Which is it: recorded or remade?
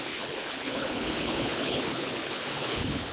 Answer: remade